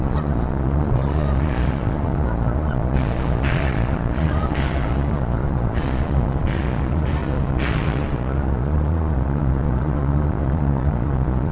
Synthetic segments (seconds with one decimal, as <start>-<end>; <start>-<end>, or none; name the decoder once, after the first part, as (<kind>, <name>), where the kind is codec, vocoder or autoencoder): 0.0-11.5 (vocoder, Vocos)